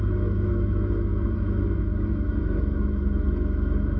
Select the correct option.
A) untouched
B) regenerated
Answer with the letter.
B